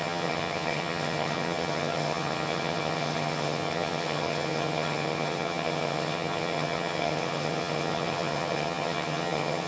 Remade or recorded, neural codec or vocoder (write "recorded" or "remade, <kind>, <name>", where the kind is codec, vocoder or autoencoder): remade, vocoder, HiFi-GAN